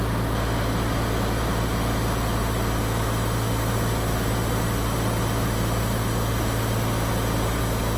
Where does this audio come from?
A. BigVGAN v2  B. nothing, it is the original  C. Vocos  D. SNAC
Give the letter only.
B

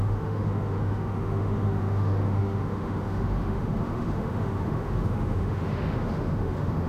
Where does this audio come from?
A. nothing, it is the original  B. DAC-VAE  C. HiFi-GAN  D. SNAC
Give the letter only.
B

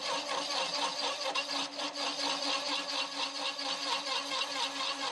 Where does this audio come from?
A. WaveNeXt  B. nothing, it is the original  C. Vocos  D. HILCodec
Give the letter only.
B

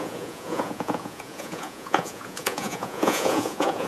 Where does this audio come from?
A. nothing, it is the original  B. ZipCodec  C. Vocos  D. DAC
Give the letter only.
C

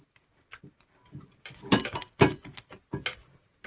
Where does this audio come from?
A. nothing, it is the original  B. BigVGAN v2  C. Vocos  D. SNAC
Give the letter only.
A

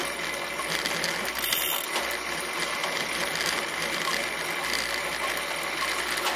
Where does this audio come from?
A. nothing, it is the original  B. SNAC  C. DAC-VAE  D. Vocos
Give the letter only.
A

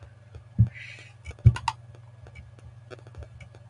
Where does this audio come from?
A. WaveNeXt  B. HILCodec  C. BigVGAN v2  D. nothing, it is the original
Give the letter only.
D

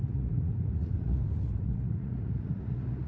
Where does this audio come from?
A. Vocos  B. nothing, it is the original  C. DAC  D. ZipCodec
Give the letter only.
A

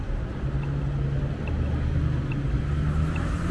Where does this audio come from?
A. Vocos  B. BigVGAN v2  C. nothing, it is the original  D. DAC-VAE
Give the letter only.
C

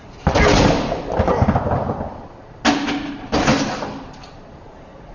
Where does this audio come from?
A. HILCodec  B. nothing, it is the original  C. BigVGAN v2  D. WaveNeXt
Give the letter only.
B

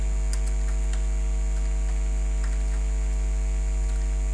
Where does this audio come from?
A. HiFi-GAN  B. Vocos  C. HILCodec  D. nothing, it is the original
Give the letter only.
D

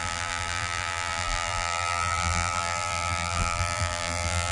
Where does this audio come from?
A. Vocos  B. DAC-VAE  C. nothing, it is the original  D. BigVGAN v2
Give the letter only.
D